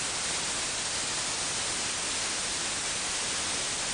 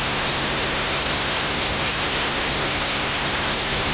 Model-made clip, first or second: second